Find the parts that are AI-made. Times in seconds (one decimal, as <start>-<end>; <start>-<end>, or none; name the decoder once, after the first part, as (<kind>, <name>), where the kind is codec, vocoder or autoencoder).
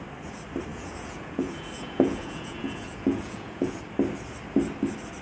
0.7-3.8 (vocoder, Vocos)